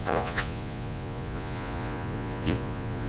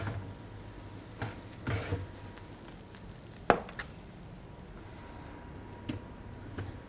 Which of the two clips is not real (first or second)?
first